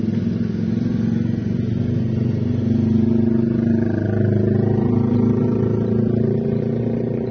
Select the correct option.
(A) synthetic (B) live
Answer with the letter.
B